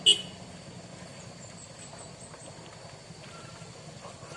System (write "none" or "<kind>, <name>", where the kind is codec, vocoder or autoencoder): none